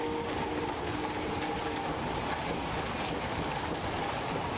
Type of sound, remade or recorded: recorded